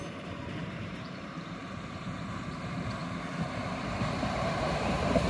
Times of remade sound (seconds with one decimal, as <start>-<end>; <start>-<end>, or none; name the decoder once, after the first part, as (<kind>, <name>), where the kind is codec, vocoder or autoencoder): 0.0-1.6 (vocoder, BigVGAN v2); 2.2-5.3